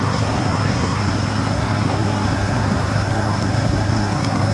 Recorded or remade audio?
remade